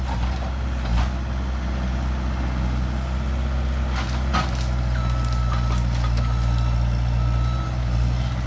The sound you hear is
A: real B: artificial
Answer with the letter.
A